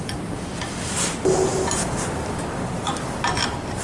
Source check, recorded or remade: recorded